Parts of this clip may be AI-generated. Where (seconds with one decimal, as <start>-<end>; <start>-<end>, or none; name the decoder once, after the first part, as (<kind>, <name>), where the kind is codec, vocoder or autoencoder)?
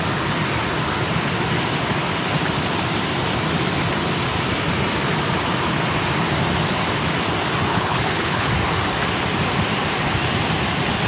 7.7-8.5 (codec, HILCodec)